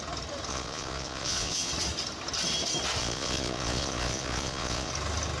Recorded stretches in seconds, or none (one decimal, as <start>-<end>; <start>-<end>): 0.0-0.5; 1.7-3.0; 4.9-5.4